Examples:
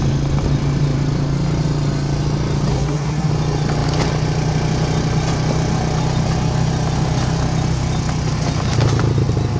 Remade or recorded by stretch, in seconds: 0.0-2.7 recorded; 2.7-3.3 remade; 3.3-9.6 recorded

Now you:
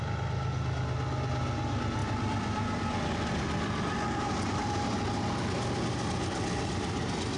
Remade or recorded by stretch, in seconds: 0.0-2.0 recorded; 2.0-5.1 remade; 5.1-7.4 recorded

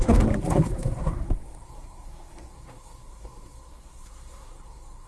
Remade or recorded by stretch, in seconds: 0.0-5.1 remade

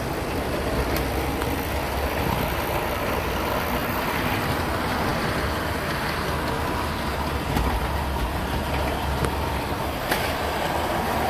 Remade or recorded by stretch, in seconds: 0.0-3.8 remade; 3.8-4.4 recorded; 4.4-5.1 remade; 5.1-9.7 recorded; 9.7-11.3 remade

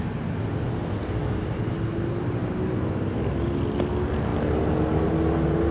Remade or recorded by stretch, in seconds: 0.0-5.7 recorded

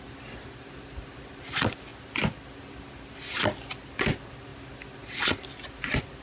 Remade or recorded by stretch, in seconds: 0.0-6.2 recorded